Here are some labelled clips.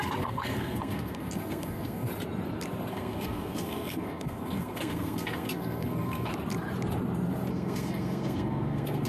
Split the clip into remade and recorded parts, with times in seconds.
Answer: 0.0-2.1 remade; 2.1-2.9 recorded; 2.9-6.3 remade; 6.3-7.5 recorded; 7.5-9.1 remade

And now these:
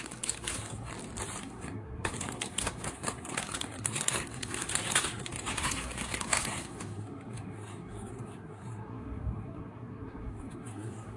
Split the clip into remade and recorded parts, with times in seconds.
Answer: 0.0-0.9 remade; 0.9-1.4 recorded; 1.4-11.2 remade

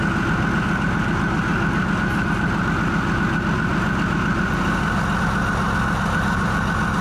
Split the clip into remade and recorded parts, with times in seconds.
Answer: 0.0-7.0 recorded

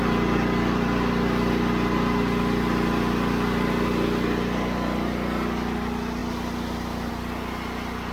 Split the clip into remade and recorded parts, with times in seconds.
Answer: 0.0-8.1 recorded

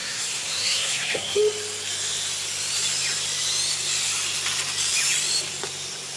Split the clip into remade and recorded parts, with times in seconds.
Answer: 0.0-1.4 remade; 1.4-6.2 recorded

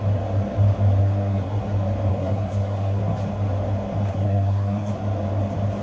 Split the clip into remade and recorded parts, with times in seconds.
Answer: 0.0-1.0 recorded; 1.0-1.6 remade; 1.6-2.1 recorded; 2.1-3.0 remade; 3.0-4.1 recorded; 4.1-4.9 remade; 4.9-5.8 recorded

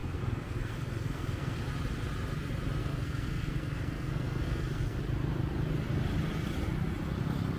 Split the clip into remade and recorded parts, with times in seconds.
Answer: 0.0-1.6 remade; 1.6-2.8 recorded; 2.8-5.0 remade; 5.0-7.6 recorded

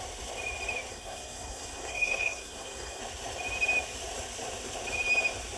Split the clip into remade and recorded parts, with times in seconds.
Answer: 0.0-0.9 recorded; 0.9-3.0 remade; 3.0-5.6 recorded